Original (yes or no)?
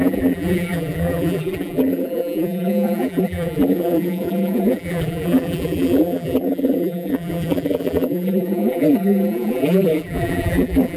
no